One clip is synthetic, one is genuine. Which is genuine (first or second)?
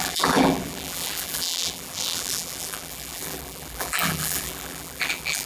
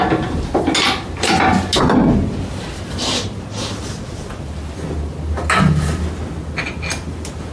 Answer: second